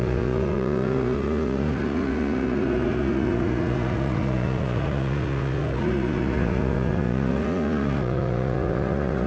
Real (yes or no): no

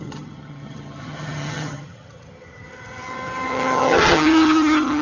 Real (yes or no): no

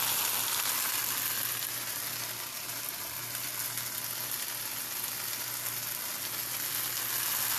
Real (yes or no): yes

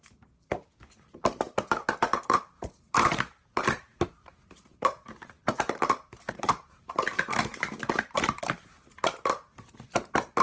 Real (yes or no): no